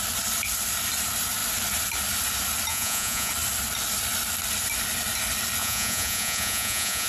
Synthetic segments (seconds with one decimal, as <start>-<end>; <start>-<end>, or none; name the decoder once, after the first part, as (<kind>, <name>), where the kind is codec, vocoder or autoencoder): 2.7-3.3 (vocoder, Vocos); 5.6-7.1